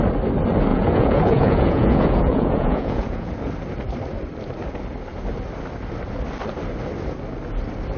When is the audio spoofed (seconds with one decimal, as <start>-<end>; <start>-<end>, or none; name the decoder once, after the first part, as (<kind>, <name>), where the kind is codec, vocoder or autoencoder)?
0.7-3.3 (vocoder, Vocos)